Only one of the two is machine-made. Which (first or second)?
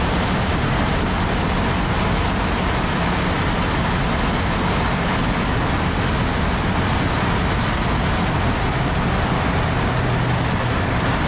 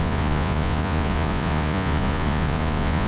second